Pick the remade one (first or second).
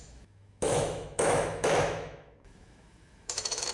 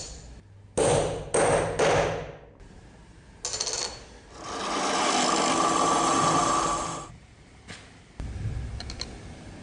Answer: first